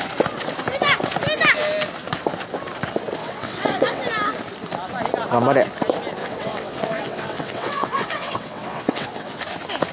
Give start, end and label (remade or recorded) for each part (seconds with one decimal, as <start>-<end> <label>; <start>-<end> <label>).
0.0-3.2 recorded; 3.2-4.0 remade; 4.0-6.2 recorded; 6.2-9.4 remade; 9.4-9.9 recorded